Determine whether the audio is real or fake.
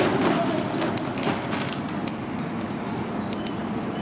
real